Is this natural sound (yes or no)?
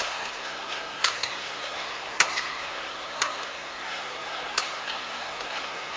no